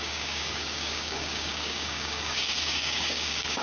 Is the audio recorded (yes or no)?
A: no